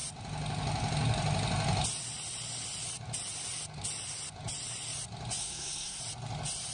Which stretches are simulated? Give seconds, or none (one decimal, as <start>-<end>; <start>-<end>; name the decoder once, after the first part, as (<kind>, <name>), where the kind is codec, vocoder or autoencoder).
5.4-6.0 (codec, SNAC)